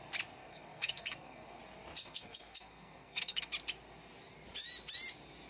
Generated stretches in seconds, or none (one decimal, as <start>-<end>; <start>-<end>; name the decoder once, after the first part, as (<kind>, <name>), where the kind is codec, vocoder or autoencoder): 0.4-1.6 (codec, SNAC); 2.0-3.5